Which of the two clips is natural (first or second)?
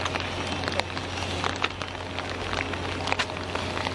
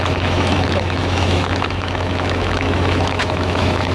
first